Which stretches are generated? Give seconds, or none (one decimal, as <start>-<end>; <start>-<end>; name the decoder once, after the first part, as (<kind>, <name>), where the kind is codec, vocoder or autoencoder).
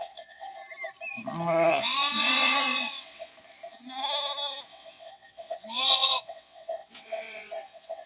0.0-0.6 (vocoder, WaveNeXt); 1.7-3.3; 4.7-8.1